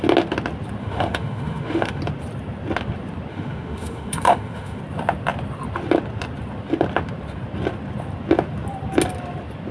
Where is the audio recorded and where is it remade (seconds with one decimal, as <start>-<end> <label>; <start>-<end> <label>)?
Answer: 0.0-0.8 recorded; 0.8-2.0 remade; 2.0-3.3 recorded; 3.3-4.8 remade; 4.8-9.7 recorded